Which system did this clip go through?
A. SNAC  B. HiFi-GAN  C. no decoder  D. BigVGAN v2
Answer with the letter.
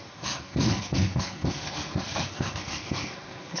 A